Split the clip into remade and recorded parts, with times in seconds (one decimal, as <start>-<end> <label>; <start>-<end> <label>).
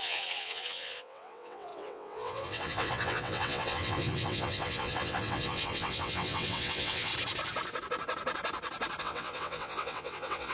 0.0-7.1 remade; 7.1-9.0 recorded; 9.0-10.5 remade